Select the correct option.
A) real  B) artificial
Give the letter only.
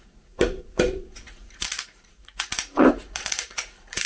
B